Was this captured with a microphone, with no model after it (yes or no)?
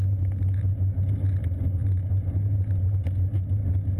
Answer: yes